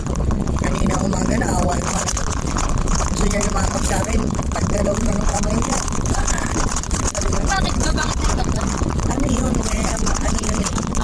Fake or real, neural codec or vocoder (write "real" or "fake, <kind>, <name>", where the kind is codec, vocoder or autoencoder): fake, vocoder, Vocos